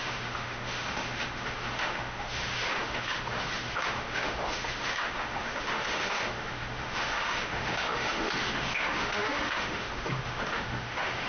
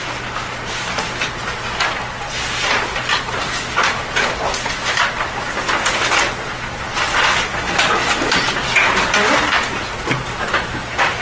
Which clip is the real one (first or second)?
second